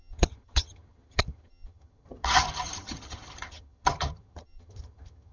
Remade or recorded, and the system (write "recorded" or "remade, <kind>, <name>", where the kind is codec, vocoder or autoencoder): remade, vocoder, HiFi-GAN